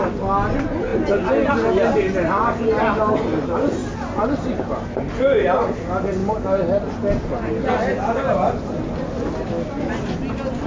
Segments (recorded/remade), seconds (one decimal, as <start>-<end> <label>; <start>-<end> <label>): 0.0-10.7 recorded